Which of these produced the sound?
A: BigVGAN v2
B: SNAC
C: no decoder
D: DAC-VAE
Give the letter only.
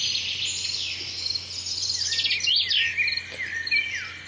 C